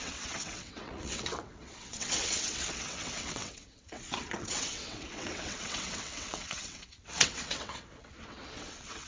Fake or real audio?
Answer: fake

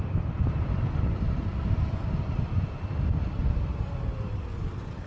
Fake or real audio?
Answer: fake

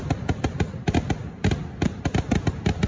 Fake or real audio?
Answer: real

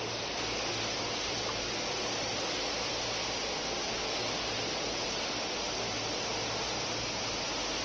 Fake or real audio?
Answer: real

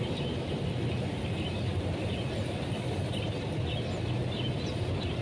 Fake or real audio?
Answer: real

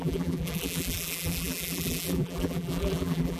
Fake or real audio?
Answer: fake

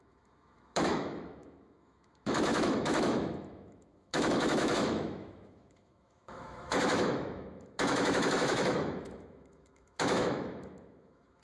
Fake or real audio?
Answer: fake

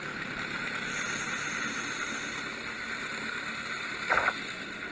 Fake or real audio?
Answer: real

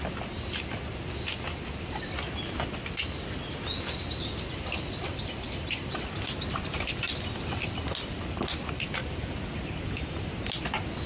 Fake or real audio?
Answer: real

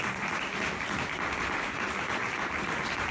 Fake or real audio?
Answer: real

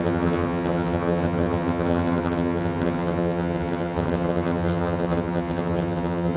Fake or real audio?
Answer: fake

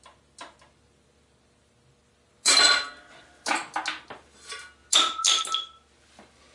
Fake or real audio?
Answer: real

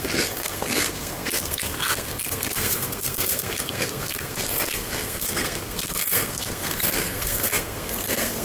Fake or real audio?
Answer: fake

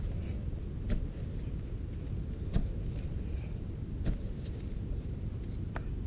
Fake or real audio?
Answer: real